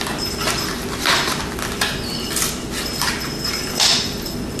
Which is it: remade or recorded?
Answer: recorded